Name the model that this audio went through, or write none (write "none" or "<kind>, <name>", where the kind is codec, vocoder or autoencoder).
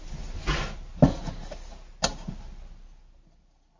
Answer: none